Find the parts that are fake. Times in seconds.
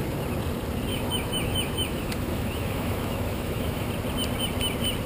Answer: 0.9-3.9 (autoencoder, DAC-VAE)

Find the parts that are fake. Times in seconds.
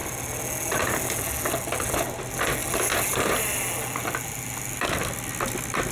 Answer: none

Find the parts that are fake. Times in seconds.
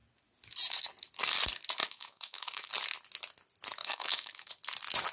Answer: 1.8-2.7 (autoencoder, DAC-VAE); 3.8-4.5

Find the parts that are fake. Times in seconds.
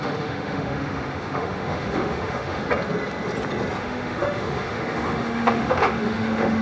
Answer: 0.0-2.6 (autoencoder, DAC-VAE); 3.8-6.6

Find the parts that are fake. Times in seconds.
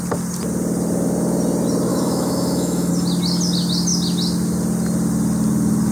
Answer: 1.9-2.9 (autoencoder, DAC-VAE)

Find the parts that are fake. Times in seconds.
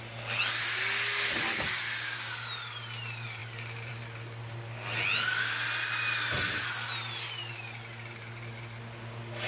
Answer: none